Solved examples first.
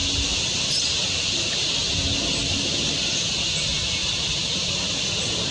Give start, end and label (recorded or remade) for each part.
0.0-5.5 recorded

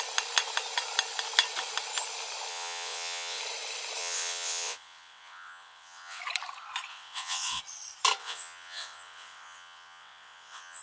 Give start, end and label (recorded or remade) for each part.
0.0-2.5 recorded; 2.5-3.4 remade; 3.4-4.0 recorded; 4.0-6.2 remade; 6.2-6.9 recorded; 6.9-7.6 remade; 7.6-8.2 recorded; 8.2-10.8 remade

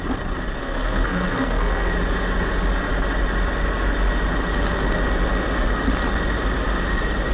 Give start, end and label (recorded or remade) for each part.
0.0-0.6 recorded; 0.6-1.9 remade; 1.9-7.3 recorded